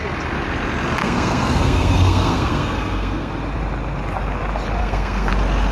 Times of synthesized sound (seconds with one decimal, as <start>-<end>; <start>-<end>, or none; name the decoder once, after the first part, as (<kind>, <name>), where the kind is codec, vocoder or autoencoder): 1.0-3.3 (codec, SNAC); 4.8-5.3